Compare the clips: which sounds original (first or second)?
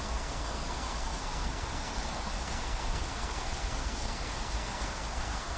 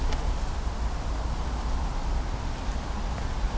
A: second